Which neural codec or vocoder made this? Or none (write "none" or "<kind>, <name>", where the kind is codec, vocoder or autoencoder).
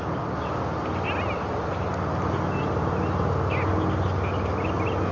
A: none